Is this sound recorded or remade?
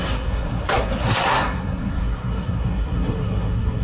remade